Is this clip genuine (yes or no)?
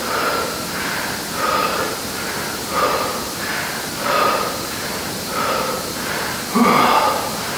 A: yes